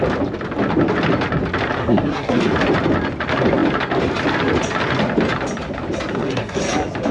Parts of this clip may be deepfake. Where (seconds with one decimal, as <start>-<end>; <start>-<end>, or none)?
1.8-2.4; 6.1-6.6